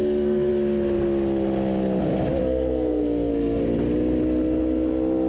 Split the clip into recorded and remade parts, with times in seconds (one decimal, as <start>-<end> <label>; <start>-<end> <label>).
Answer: 0.0-0.5 remade; 0.5-2.4 recorded; 2.4-3.6 remade; 3.6-5.3 recorded

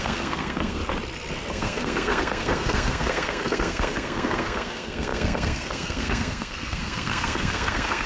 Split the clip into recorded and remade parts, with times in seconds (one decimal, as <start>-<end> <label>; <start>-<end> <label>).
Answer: 0.0-0.8 remade; 0.8-1.5 recorded; 1.5-8.1 remade

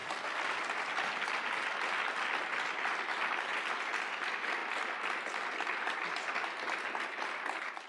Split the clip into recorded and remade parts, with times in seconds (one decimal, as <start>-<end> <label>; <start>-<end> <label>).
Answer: 0.0-7.9 recorded

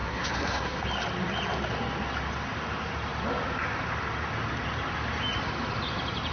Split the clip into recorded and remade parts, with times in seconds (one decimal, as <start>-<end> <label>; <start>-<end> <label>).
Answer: 0.0-0.8 remade; 0.8-6.3 recorded

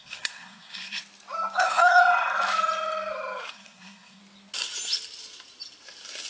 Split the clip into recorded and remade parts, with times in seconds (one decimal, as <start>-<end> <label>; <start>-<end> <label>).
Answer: 0.0-1.0 remade; 1.0-1.6 recorded; 1.6-2.0 remade; 2.0-3.5 recorded; 3.5-4.2 remade; 4.2-6.3 recorded